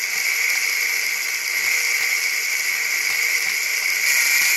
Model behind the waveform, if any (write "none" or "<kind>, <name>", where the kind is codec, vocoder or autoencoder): none